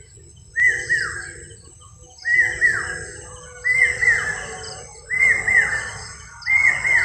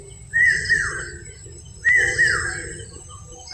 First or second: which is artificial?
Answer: second